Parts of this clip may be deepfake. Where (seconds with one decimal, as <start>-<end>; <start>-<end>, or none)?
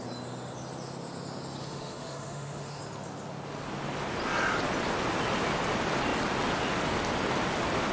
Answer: 1.6-2.8